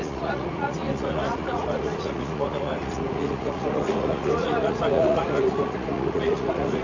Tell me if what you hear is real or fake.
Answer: fake